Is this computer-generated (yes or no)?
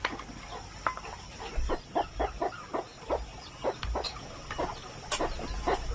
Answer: no